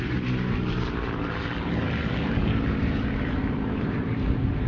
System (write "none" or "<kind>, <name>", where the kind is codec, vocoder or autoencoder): vocoder, BigVGAN v2